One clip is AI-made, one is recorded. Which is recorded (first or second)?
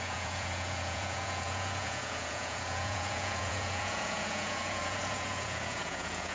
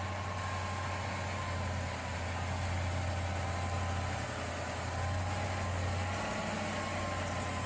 second